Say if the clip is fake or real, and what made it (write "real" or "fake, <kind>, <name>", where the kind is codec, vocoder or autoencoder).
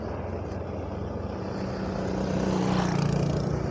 real